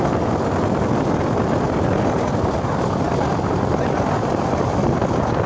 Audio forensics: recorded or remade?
recorded